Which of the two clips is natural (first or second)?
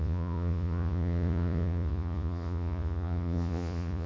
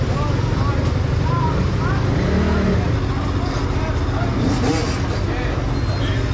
second